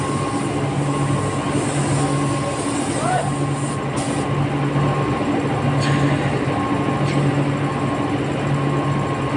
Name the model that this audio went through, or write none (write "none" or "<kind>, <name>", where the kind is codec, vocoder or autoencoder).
none